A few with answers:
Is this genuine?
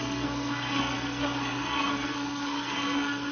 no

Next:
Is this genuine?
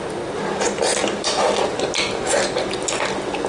yes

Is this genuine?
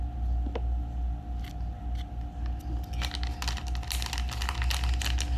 yes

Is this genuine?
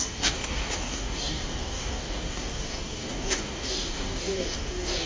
no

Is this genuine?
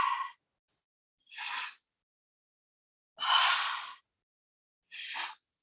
yes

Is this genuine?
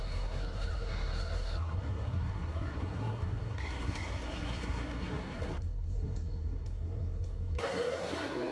no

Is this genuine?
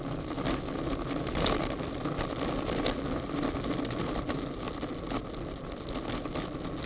yes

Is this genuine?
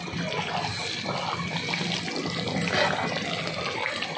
yes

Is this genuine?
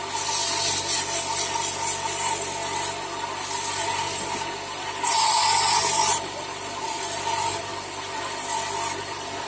yes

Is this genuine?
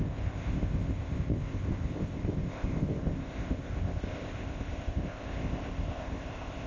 no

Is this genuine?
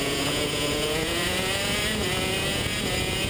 no